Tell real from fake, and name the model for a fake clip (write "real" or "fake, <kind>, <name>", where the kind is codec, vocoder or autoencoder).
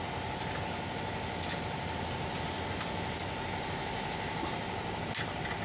real